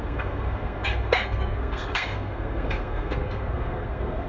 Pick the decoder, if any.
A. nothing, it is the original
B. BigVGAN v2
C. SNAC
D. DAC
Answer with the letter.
C